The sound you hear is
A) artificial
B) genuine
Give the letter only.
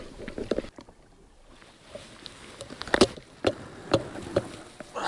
B